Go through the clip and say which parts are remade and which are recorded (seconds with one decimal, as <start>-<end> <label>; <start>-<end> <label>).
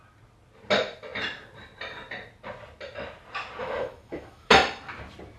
0.0-3.6 recorded; 3.6-4.5 remade; 4.5-5.4 recorded